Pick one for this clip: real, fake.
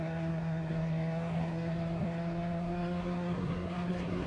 fake